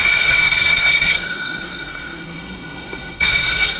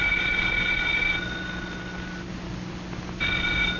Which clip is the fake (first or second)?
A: first